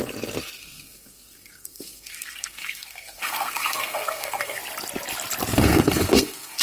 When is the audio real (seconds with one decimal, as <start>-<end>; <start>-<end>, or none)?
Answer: 0.0-0.6; 4.6-5.5